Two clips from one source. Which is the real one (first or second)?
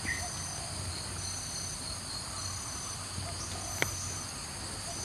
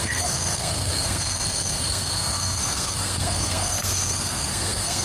first